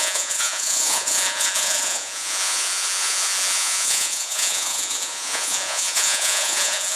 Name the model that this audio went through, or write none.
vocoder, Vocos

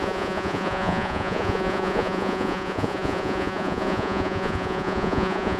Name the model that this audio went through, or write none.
vocoder, Vocos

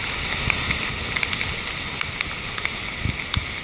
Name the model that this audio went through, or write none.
none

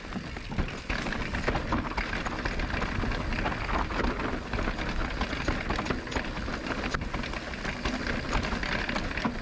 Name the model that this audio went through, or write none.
none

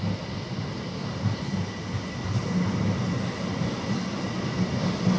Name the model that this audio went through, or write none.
none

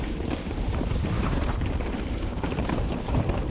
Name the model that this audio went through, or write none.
vocoder, BigVGAN v2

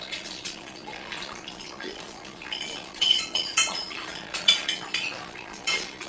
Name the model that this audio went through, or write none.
vocoder, Vocos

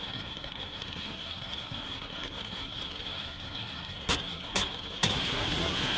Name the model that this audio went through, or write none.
codec, SNAC